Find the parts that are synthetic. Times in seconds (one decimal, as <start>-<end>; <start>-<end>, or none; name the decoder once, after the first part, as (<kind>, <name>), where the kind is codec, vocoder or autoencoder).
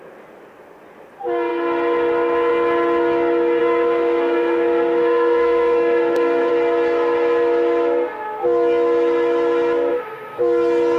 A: 3.6-6.5 (codec, SNAC); 9.9-10.4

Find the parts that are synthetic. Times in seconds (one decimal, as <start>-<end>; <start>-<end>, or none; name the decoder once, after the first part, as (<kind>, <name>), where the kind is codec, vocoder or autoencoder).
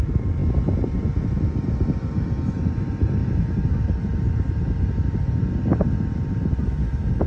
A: none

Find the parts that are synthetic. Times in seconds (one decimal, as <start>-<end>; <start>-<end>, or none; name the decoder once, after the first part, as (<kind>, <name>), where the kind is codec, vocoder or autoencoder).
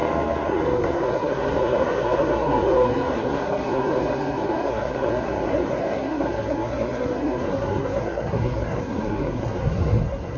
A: 0.0-10.4 (codec, SNAC)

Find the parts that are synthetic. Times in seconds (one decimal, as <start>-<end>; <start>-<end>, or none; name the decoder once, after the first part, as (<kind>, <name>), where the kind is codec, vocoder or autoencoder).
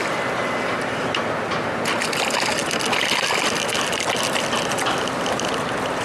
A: none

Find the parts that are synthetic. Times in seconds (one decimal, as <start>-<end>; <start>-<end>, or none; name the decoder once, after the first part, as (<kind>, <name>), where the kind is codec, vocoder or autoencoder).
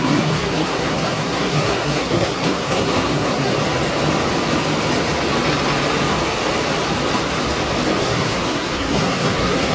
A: 0.0-3.5 (codec, SNAC); 8.0-9.7